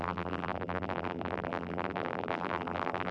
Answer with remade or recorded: remade